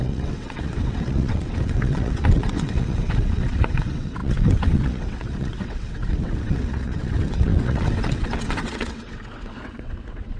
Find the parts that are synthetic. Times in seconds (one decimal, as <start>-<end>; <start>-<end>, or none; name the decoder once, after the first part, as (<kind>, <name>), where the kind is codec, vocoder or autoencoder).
0.0-10.4 (vocoder, WaveNeXt)